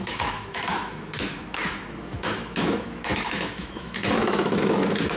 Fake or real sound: fake